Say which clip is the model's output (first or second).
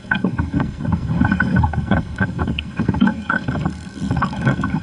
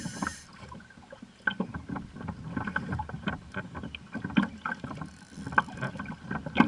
first